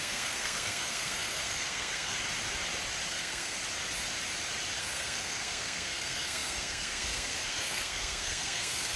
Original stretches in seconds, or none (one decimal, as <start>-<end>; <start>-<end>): 2.1-3.1; 3.6-4.8